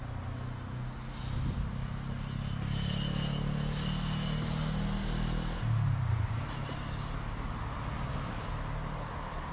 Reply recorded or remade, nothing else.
recorded